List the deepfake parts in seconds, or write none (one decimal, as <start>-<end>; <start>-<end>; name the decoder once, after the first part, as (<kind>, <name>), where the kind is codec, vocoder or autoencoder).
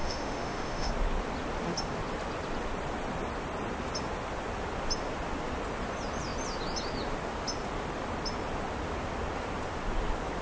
0.0-0.9 (autoencoder, DAC-VAE)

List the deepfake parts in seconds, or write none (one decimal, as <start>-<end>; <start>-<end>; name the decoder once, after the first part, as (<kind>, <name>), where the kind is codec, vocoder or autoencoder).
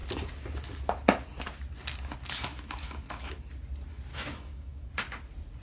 2.5-3.3 (autoencoder, DAC-VAE); 4.1-4.9